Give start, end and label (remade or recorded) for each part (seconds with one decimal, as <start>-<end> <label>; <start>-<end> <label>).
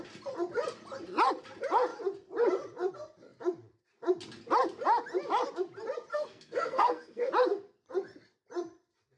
0.0-6.1 recorded; 6.1-7.3 remade; 7.3-9.2 recorded